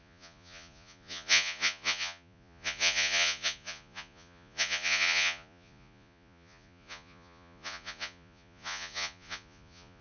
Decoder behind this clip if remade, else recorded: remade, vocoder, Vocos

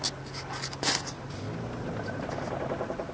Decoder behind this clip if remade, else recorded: recorded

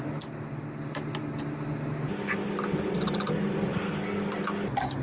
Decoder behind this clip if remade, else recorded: recorded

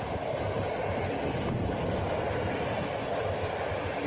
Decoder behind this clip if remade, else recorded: recorded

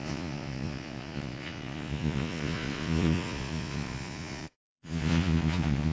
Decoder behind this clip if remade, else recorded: remade, vocoder, Vocos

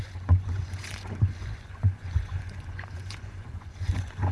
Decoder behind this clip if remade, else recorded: remade, vocoder, Vocos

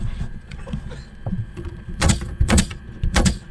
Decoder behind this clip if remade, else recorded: remade, vocoder, Vocos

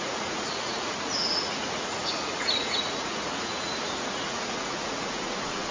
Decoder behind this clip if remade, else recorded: remade, vocoder, Vocos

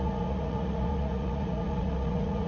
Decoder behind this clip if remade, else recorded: remade, vocoder, Vocos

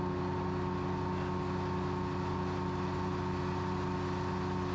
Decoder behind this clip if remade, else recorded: recorded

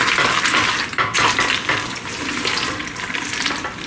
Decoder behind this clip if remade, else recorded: recorded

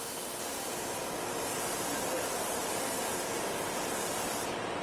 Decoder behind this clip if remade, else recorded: recorded